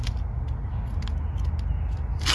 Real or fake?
real